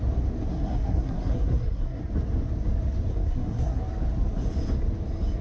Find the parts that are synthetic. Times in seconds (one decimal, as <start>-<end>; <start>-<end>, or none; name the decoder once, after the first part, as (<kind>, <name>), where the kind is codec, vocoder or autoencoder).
0.5-2.0 (codec, SNAC); 3.1-3.8